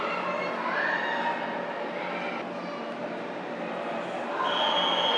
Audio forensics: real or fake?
real